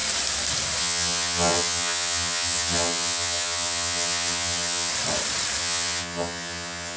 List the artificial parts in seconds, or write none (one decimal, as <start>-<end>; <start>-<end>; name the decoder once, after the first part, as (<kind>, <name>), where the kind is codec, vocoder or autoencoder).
0.8-4.9 (vocoder, HiFi-GAN); 5.6-7.0